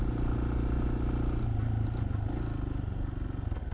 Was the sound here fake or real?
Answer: real